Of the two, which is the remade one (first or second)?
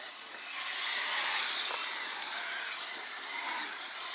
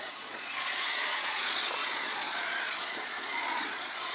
second